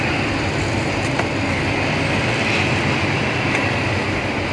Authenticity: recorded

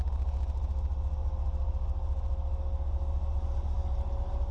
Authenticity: recorded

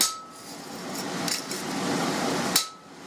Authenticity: recorded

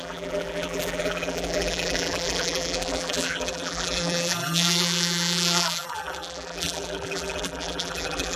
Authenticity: remade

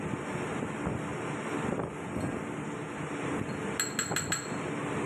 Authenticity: recorded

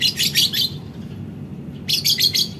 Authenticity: recorded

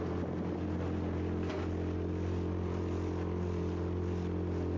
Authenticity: recorded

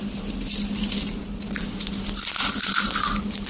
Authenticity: recorded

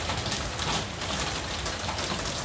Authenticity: recorded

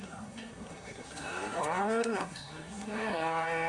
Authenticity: remade